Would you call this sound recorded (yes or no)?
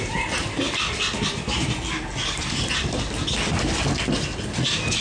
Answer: yes